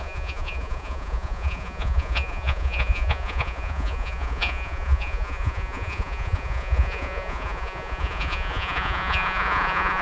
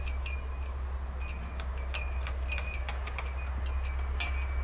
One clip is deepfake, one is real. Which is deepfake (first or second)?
first